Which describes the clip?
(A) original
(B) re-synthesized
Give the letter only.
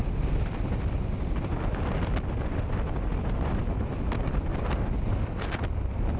A